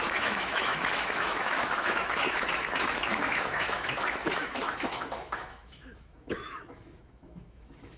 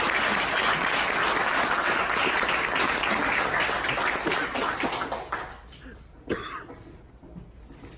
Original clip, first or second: second